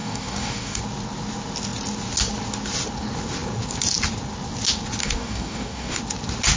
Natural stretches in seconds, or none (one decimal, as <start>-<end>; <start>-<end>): 0.8-5.0; 6.0-6.6